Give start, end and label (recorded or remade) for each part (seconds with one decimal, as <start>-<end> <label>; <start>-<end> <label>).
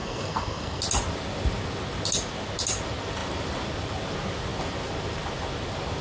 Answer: 0.0-0.8 remade; 0.8-6.0 recorded